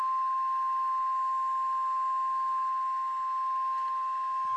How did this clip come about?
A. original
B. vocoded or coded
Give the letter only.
A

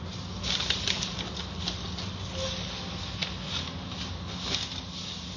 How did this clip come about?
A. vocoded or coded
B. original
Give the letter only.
B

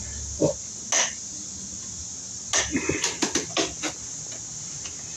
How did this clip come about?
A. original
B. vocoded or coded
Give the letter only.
A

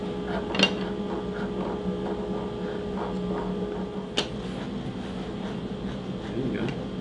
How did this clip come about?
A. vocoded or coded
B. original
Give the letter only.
B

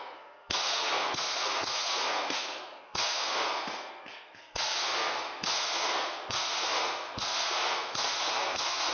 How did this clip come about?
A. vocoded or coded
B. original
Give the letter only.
A